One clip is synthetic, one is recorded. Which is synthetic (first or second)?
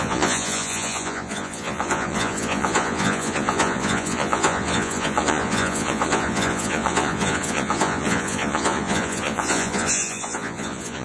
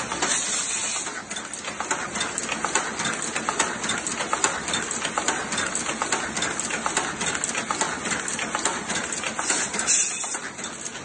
first